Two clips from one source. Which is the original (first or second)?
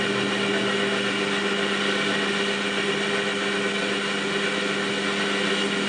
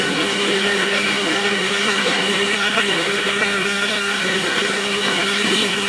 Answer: first